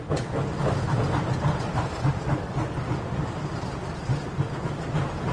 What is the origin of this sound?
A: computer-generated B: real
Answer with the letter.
B